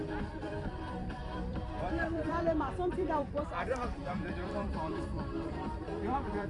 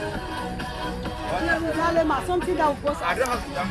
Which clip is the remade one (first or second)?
first